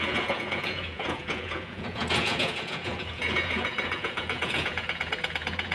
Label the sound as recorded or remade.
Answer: remade